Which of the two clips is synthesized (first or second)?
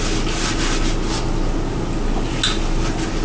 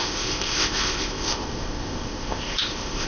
second